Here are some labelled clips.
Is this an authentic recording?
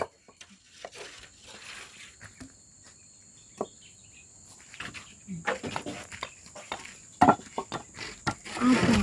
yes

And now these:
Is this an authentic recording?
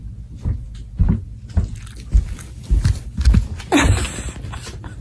yes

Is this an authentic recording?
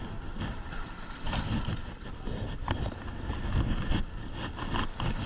yes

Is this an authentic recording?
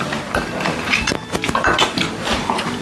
no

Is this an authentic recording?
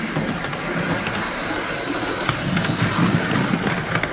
no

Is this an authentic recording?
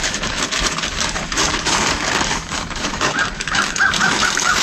no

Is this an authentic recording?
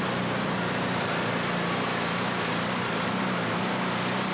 yes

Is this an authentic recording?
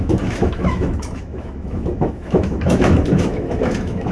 no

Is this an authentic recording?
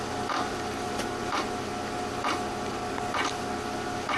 yes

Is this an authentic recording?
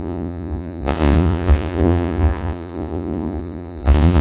no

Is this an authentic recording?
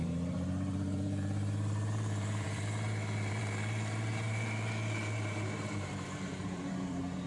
no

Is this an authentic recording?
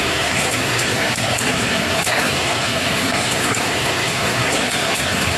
no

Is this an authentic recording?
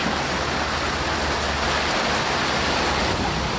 yes